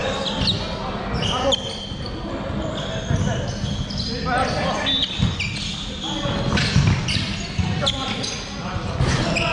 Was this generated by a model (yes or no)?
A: no